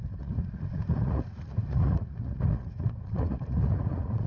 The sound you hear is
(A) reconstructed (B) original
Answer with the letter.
A